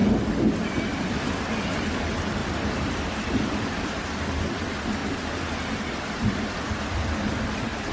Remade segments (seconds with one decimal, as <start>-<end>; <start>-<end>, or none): 0.5-5.0; 5.7-7.9